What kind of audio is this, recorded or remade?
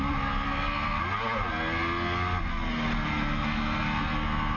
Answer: recorded